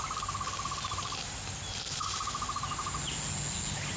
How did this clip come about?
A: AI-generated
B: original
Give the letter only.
B